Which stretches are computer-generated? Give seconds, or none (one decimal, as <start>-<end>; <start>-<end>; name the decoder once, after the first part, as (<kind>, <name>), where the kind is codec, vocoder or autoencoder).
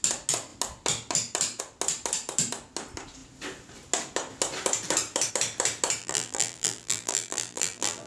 6.0-8.1 (vocoder, BigVGAN v2)